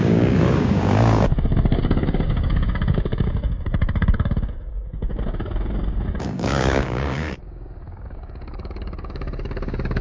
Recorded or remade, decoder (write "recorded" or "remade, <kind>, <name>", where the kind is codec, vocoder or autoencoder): remade, codec, DAC